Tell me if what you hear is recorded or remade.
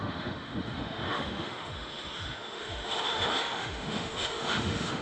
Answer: remade